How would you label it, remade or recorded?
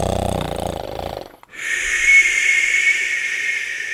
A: recorded